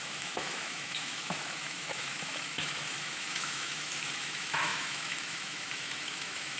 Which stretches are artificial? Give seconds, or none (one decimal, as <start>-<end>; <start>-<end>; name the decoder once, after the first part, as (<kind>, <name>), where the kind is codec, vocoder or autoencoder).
0.0-6.6 (autoencoder, DAC-VAE)

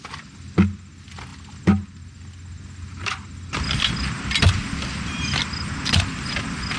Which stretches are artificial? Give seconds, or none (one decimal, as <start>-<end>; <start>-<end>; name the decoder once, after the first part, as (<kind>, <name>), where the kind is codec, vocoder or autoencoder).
none

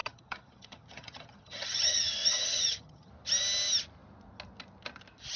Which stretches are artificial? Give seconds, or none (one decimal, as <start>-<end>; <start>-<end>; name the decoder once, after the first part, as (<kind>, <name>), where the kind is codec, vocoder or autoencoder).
0.0-3.1 (vocoder, HiFi-GAN)

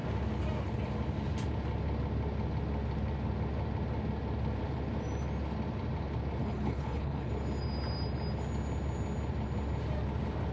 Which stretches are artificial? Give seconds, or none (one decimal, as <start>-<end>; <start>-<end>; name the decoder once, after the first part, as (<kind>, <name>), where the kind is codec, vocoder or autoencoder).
6.4-7.3 (codec, HILCodec)

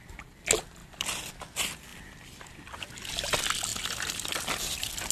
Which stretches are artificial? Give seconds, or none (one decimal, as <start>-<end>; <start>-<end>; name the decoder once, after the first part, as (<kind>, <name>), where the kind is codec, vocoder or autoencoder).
0.8-1.3 (vocoder, BigVGAN v2)

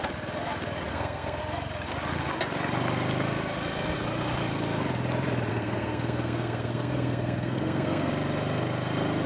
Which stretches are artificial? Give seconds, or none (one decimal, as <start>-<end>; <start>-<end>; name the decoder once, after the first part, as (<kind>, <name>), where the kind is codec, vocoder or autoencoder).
0.9-1.4 (codec, SNAC); 5.5-8.1

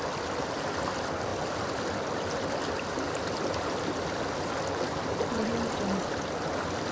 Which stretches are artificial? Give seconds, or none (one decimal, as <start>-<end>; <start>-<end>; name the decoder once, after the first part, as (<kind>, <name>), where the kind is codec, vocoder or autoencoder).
none